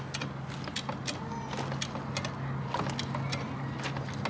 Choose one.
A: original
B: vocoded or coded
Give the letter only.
A